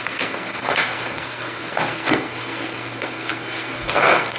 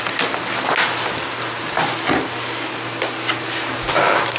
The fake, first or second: first